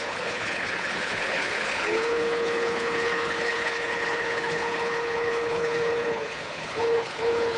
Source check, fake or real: fake